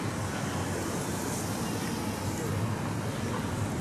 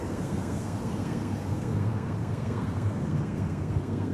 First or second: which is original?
first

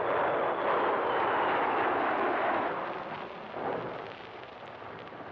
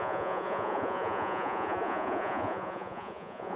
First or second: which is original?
first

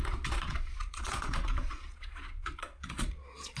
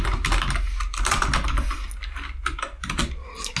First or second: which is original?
second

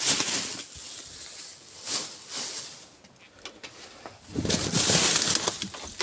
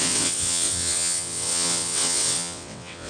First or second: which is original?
first